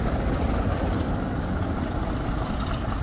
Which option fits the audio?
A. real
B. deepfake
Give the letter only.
B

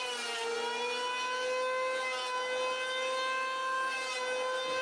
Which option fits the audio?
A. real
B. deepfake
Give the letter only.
A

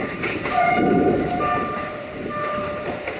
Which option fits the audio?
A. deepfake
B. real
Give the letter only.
A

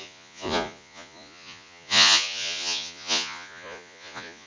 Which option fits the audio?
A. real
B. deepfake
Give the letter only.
B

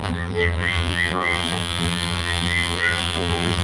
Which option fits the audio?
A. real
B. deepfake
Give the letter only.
B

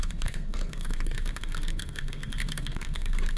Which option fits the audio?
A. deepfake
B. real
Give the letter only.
A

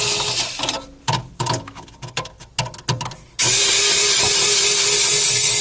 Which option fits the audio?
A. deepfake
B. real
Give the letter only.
B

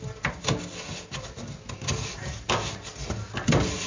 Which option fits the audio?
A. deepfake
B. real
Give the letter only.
B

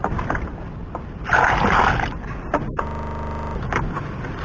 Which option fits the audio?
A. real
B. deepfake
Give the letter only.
A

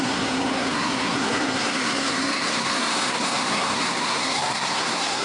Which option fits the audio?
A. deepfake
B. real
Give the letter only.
A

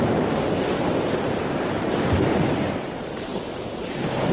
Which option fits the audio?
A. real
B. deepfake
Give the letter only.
A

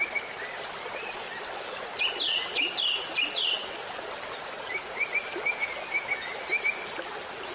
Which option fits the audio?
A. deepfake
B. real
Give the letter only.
B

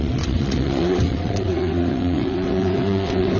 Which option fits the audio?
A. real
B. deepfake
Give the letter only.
B